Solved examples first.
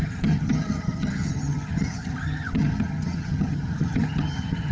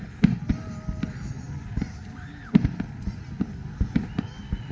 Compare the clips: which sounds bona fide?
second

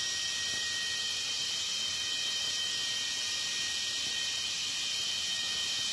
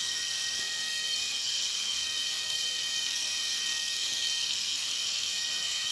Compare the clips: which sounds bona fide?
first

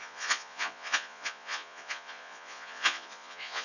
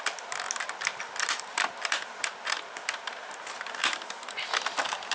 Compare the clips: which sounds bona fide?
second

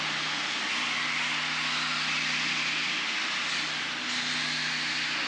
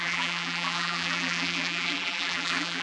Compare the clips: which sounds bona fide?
first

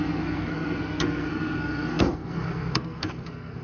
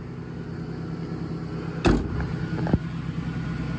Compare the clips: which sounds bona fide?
second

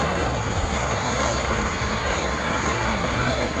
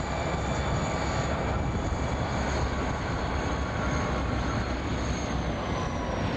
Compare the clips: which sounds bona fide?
second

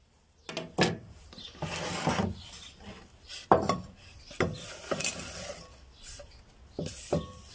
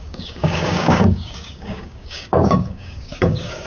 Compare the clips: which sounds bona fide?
first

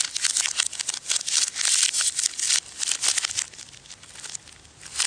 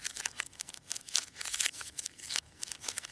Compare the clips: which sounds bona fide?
first